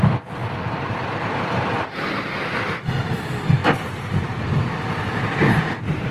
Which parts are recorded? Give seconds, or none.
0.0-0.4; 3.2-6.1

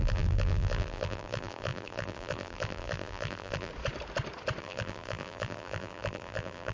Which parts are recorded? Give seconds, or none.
3.7-4.6

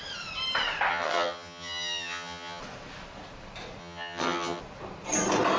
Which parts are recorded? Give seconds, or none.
0.0-0.9; 2.6-3.8; 4.6-5.6

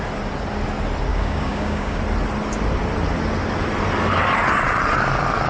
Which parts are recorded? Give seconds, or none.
0.0-1.1; 2.0-5.5

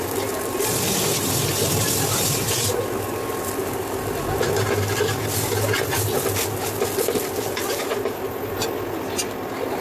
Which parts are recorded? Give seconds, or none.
0.0-9.8